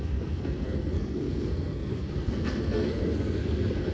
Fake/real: fake